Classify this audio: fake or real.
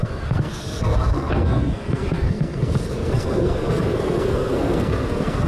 fake